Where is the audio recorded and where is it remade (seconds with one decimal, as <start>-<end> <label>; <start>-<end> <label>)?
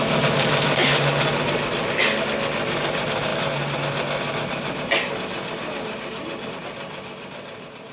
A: 0.0-7.9 recorded